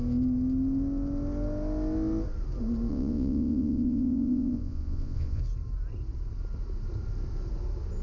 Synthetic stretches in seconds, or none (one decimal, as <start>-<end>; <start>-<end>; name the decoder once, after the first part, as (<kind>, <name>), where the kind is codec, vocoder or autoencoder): 2.9-5.4 (vocoder, Vocos)